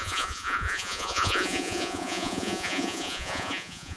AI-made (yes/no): yes